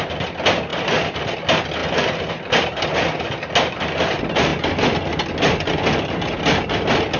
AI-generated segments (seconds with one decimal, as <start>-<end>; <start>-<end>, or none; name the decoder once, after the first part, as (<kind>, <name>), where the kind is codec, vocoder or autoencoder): none